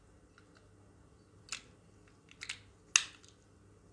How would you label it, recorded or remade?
recorded